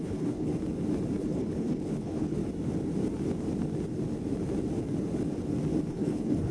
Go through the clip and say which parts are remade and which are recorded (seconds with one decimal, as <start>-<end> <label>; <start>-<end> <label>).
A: 0.0-0.5 remade; 0.5-1.2 recorded; 1.2-2.4 remade; 2.4-5.9 recorded; 5.9-6.5 remade